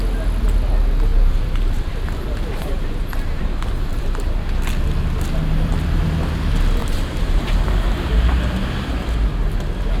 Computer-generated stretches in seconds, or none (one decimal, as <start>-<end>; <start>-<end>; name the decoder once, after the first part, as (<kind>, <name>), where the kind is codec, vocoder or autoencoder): 1.1-3.4 (vocoder, BigVGAN v2); 3.9-4.4; 6.8-8.4